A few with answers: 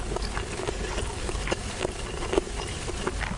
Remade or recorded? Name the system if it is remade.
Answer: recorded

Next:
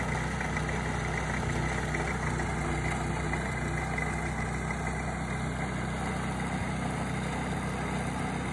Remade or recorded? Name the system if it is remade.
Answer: recorded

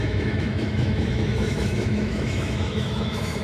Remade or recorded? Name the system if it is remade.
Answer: remade, autoencoder, DAC-VAE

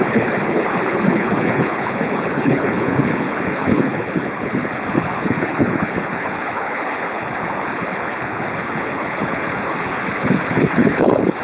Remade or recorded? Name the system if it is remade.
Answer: remade, codec, HILCodec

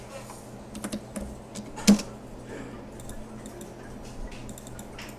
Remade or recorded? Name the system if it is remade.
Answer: recorded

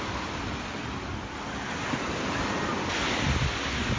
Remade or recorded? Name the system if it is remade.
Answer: recorded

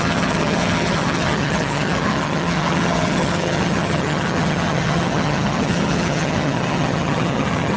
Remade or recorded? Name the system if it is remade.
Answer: remade, vocoder, HiFi-GAN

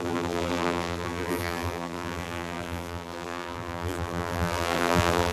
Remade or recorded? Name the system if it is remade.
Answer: remade, vocoder, BigVGAN v2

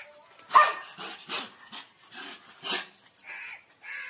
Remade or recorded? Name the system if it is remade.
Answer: recorded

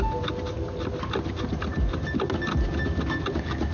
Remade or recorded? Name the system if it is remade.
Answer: recorded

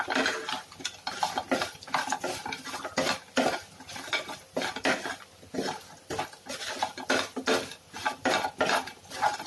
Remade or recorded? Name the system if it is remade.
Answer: recorded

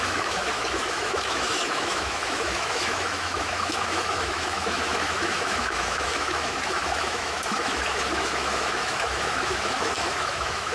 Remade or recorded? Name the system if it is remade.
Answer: remade, autoencoder, DAC-VAE